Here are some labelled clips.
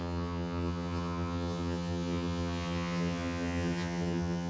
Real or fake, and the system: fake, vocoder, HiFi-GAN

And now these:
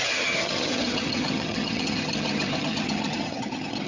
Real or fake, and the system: fake, vocoder, HiFi-GAN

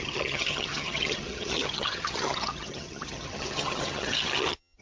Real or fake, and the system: fake, vocoder, HiFi-GAN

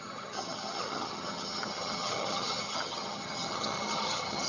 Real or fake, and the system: fake, vocoder, HiFi-GAN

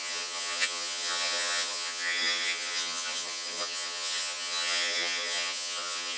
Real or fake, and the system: fake, vocoder, HiFi-GAN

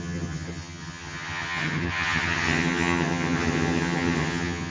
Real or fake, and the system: fake, vocoder, HiFi-GAN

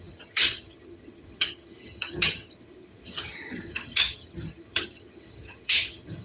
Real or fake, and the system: fake, vocoder, HiFi-GAN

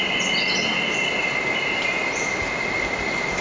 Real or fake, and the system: real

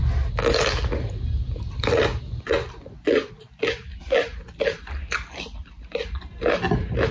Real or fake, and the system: real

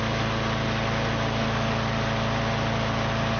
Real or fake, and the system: real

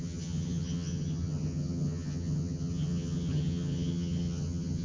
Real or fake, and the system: fake, vocoder, HiFi-GAN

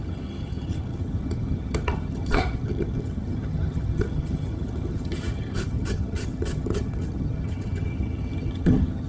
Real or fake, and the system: fake, vocoder, HiFi-GAN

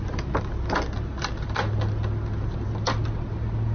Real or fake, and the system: real